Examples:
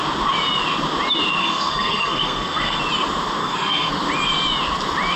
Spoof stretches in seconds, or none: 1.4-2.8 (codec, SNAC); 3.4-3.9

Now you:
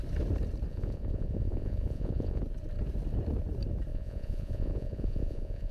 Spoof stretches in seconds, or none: 0.7-2.4 (vocoder, Vocos); 3.9-5.7

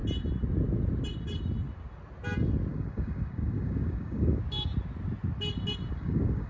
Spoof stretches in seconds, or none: 2.7-4.4 (codec, DAC); 5.9-6.5

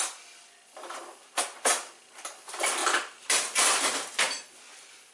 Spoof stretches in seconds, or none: none

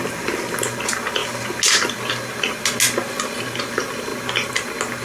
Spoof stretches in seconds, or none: none

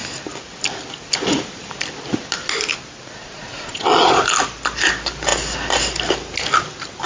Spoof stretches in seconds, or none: 3.2-4.2 (vocoder, Vocos)